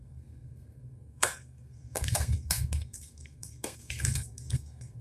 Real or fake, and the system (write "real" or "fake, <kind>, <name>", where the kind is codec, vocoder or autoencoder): fake, codec, SNAC